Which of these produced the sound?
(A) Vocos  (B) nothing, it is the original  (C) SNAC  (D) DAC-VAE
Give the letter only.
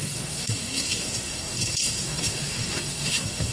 C